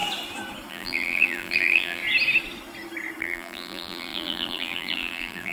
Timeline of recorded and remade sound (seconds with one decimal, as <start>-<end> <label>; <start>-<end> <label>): 0.0-0.7 recorded; 0.7-2.0 remade; 2.0-3.2 recorded; 3.2-5.5 remade